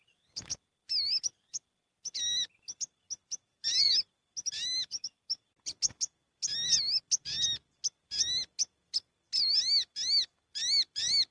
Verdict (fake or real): real